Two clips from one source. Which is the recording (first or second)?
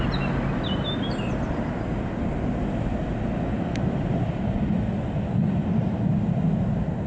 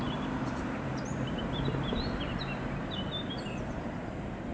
first